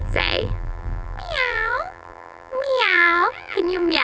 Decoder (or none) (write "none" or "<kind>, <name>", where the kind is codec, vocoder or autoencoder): vocoder, BigVGAN v2